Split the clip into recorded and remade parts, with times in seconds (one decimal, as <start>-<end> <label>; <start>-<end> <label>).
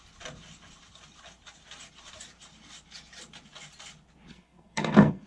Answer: 0.0-4.3 recorded; 4.3-5.3 remade